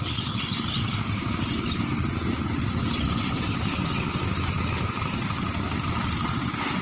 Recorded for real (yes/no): yes